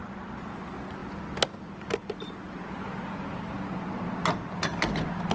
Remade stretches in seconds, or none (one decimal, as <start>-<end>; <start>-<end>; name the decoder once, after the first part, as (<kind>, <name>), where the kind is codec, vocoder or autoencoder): none